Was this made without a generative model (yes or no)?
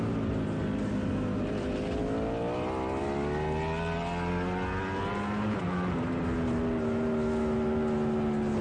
yes